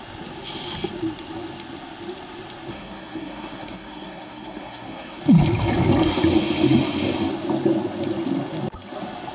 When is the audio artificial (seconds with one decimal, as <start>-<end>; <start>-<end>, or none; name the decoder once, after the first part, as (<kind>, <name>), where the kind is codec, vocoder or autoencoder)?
2.7-5.2 (codec, SNAC)